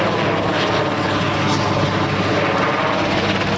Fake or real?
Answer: real